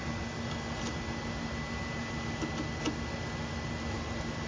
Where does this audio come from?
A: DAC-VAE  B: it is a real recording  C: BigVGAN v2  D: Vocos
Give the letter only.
B